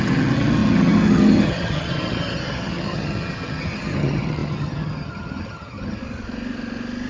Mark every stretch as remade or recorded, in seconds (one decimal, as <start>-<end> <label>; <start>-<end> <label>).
0.0-6.0 remade; 6.0-7.1 recorded